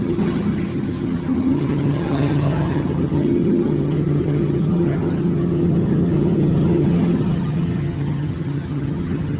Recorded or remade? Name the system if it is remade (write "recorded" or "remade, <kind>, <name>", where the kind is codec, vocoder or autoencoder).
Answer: remade, vocoder, HiFi-GAN